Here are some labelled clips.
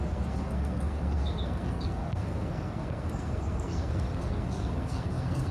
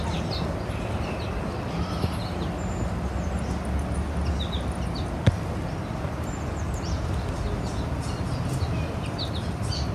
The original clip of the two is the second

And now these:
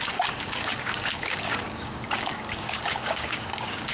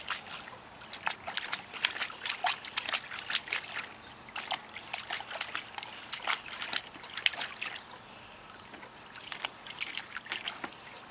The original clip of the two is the second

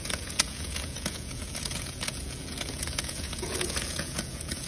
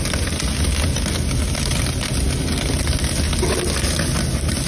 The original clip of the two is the second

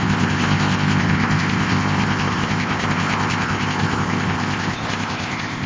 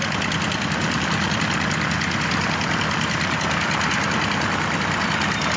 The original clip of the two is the second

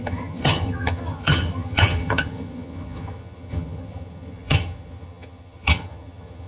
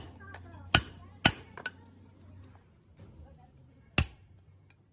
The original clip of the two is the second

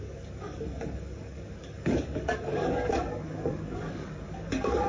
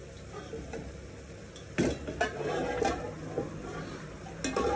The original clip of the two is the second